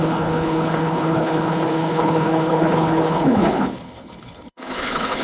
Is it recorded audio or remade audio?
remade